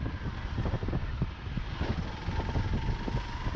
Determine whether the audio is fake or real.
real